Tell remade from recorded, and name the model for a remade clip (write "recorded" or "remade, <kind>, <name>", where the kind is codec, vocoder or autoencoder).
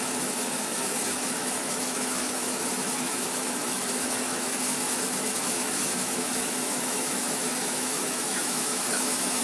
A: remade, autoencoder, DAC-VAE